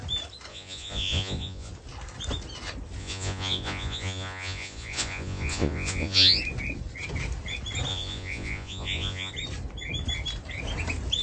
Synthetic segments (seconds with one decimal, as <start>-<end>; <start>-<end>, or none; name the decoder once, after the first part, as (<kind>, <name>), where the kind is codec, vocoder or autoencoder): 0.5-1.7 (vocoder, Vocos); 3.0-6.4; 7.9-9.3